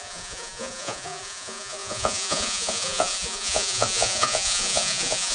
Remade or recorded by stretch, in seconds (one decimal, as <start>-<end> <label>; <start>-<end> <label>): 0.0-5.3 remade